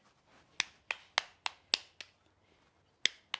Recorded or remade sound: recorded